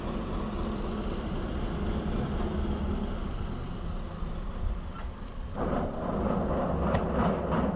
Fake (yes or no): no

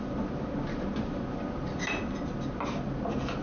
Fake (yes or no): no